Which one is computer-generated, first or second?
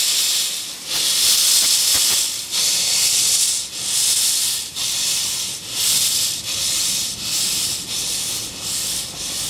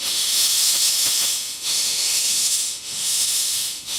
second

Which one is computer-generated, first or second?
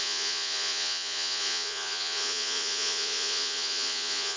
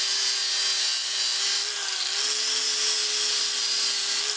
first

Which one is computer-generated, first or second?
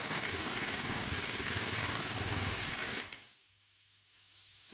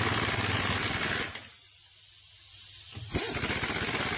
first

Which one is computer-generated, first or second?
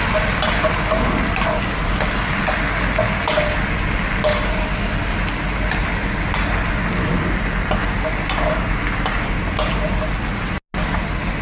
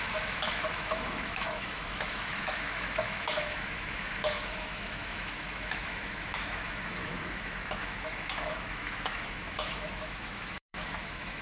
second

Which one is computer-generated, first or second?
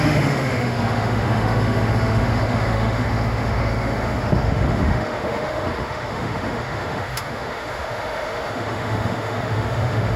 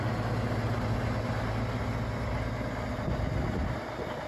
first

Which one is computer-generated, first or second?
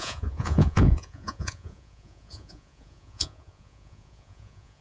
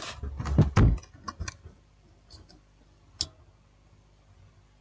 first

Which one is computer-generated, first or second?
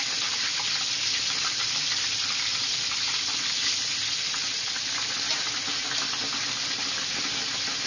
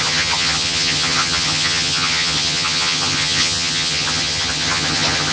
second